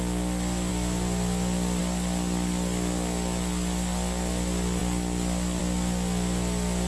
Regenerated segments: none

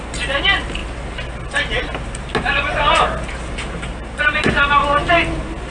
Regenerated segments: none